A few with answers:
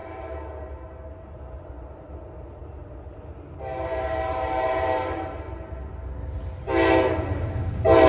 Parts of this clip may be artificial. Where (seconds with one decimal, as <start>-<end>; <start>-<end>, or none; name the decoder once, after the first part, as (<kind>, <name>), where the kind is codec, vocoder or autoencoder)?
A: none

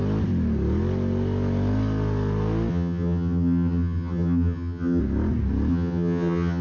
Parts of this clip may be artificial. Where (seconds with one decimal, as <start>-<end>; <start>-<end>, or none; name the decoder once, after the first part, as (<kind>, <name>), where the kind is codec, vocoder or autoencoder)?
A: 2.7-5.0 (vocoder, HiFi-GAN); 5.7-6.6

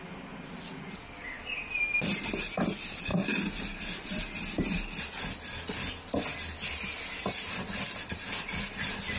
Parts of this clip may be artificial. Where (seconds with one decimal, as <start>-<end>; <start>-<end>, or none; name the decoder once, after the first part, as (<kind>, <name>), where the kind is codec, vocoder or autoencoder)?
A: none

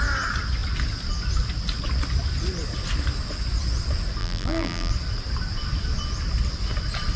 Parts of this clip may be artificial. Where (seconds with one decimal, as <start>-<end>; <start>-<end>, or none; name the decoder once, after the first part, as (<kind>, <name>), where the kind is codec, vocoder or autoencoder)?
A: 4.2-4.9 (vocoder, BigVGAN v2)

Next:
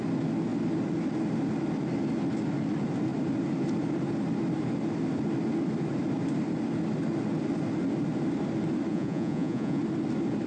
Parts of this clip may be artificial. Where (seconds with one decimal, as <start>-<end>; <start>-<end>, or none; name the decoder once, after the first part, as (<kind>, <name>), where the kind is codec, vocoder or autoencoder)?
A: 8.9-9.8 (vocoder, Vocos)

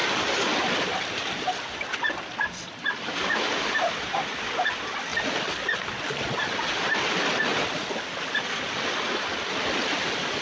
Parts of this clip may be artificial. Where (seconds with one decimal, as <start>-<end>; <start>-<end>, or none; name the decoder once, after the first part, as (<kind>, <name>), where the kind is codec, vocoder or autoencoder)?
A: 0.0-5.1 (vocoder, BigVGAN v2); 6.0-10.4

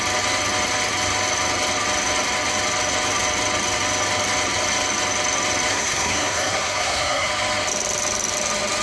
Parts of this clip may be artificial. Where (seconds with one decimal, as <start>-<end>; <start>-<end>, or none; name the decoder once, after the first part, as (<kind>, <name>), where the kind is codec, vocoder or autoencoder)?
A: 5.7-7.3 (codec, SNAC)

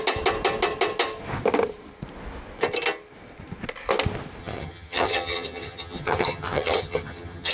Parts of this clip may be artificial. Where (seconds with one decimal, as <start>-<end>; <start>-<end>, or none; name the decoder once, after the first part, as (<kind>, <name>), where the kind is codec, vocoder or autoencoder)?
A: 4.4-7.5 (vocoder, HiFi-GAN)